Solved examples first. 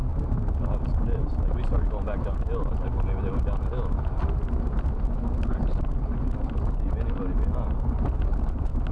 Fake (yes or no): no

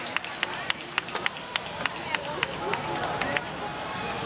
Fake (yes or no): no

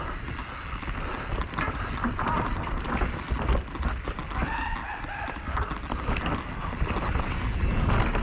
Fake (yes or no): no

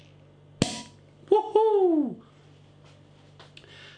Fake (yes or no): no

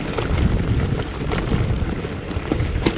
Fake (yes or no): no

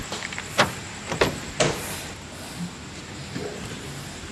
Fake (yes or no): no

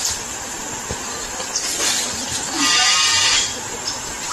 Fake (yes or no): no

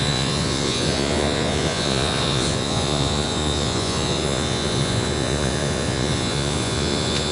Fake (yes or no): yes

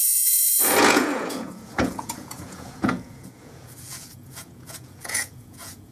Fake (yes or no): yes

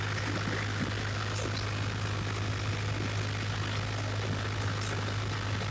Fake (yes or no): no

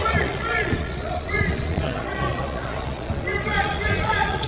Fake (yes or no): yes